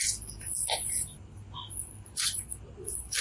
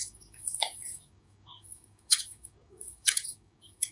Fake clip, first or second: second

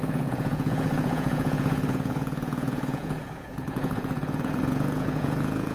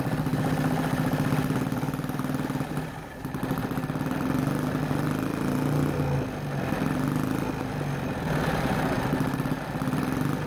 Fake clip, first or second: first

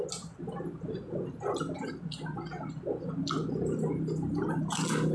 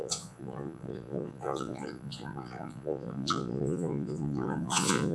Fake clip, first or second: second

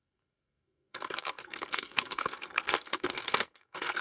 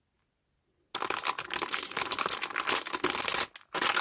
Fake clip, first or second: first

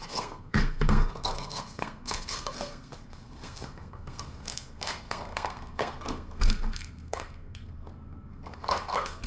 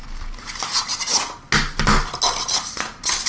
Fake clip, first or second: first